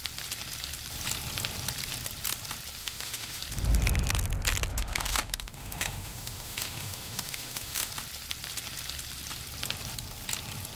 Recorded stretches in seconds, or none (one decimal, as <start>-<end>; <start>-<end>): 0.0-2.8; 3.4-4.7; 7.9-10.8